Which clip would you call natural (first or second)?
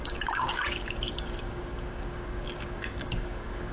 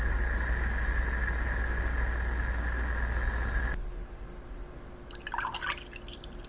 second